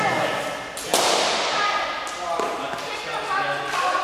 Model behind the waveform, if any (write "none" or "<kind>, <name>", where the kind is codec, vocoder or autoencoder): none